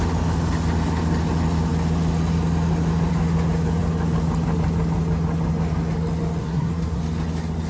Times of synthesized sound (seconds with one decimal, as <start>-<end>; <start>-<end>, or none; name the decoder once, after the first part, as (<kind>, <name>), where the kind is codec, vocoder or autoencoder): 6.4-7.0 (codec, SNAC)